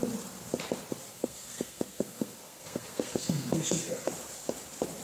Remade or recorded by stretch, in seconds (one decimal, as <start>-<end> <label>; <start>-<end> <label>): 0.0-1.1 recorded; 1.1-4.1 remade; 4.1-5.0 recorded